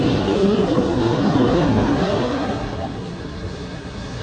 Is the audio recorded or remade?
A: remade